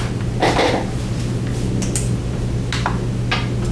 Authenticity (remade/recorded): recorded